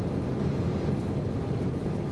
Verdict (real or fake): real